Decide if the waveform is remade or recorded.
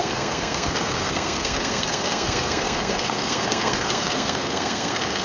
remade